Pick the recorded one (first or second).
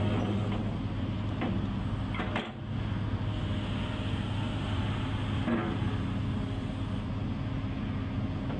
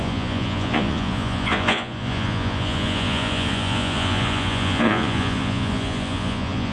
first